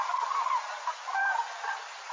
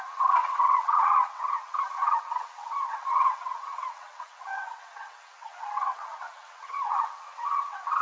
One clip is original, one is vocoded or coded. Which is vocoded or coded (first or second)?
second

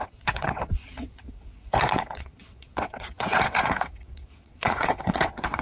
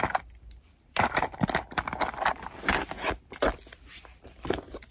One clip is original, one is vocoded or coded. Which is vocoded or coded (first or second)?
first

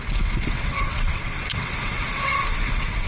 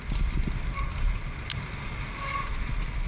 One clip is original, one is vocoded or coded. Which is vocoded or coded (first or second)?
first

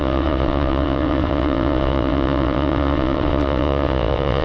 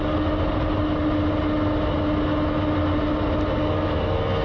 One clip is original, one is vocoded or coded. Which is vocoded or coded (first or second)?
first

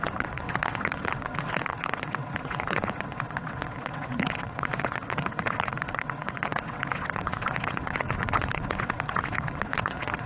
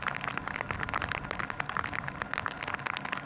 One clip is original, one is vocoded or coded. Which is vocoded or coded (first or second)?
first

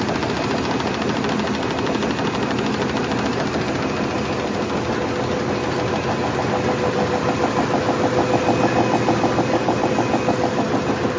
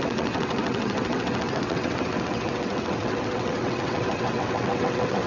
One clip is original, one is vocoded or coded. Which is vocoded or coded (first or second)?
second